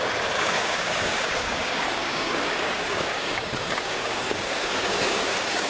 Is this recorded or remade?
remade